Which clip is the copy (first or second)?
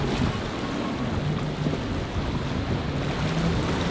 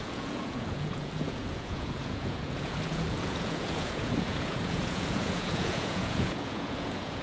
second